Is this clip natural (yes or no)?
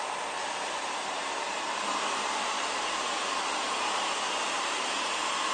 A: yes